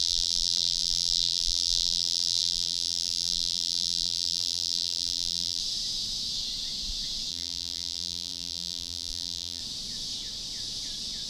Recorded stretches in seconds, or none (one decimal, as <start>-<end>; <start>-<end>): 5.6-7.3; 9.6-11.3